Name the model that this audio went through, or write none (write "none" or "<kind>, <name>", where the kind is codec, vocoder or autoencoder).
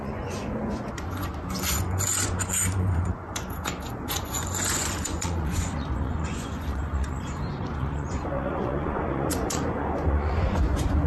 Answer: vocoder, Vocos